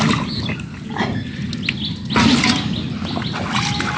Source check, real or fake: real